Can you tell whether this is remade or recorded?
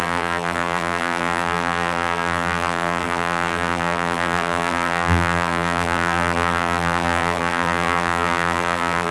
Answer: remade